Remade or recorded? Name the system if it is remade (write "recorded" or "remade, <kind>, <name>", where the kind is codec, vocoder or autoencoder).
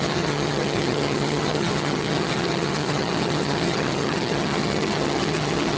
remade, vocoder, HiFi-GAN